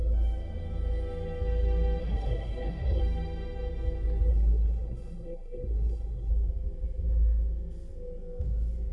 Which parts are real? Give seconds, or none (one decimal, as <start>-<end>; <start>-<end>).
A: 0.0-2.0; 3.0-4.3; 6.3-8.9